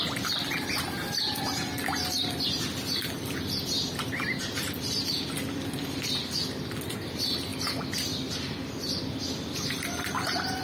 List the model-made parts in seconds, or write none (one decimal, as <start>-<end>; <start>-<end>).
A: none